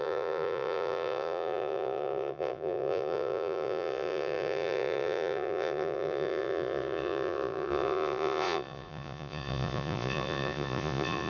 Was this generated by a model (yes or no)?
yes